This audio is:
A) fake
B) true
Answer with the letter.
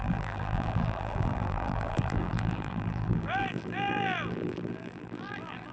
A